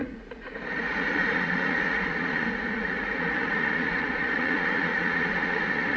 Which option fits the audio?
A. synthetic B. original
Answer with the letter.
A